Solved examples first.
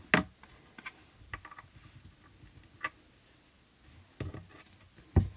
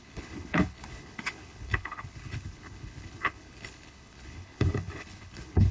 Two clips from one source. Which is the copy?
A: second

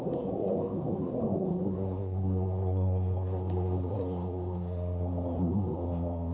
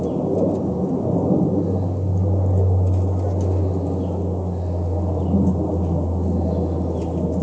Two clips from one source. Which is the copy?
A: first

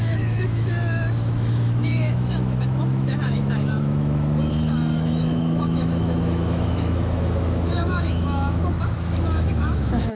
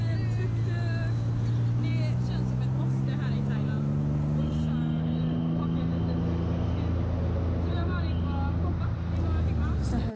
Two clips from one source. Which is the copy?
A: first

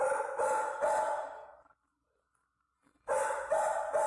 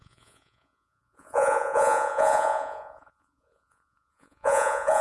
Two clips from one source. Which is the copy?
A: second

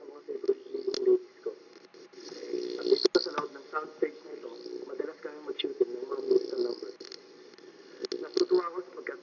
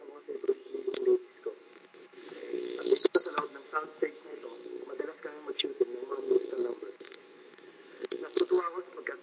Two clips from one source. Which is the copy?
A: second